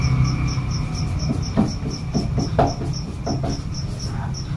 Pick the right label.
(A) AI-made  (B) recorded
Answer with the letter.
B